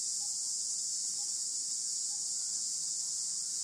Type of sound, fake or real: fake